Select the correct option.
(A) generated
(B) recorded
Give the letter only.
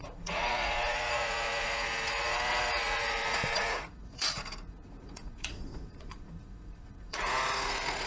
A